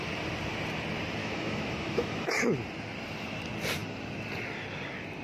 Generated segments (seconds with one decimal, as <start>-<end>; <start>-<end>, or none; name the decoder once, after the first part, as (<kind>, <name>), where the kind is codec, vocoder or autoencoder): 1.2-2.3 (autoencoder, DAC-VAE)